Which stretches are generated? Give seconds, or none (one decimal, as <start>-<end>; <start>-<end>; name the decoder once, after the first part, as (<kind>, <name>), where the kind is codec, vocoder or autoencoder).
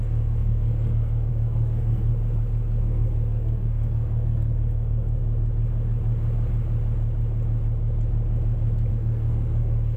0.0-2.1 (codec, SNAC); 2.8-5.2; 8.9-10.0